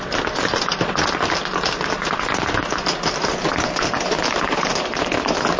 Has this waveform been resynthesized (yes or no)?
no